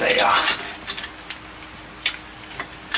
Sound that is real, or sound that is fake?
real